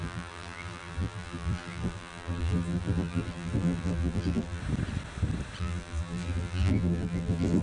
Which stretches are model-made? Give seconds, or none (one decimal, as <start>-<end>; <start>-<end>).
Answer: 0.0-4.6; 5.6-7.6